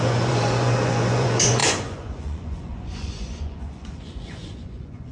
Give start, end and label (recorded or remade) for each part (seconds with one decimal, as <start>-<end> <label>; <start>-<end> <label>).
0.0-5.1 remade